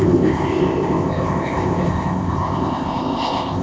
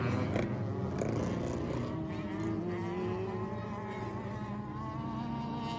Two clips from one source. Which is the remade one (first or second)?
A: first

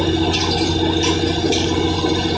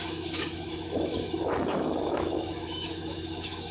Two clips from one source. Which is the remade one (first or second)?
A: second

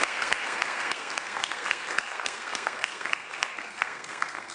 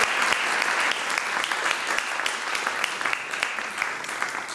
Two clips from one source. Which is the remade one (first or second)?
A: first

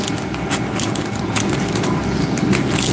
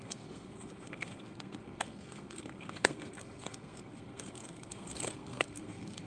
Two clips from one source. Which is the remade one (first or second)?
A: second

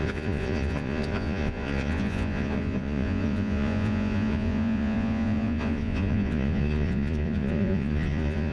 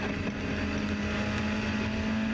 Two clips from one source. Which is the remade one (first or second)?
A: first